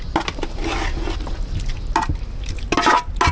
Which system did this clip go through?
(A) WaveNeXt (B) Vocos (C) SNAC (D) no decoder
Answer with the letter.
D